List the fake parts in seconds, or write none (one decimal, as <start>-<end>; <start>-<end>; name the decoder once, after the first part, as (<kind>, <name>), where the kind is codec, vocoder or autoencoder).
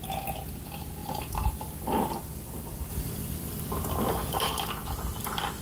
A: 2.9-4.4 (vocoder, BigVGAN v2)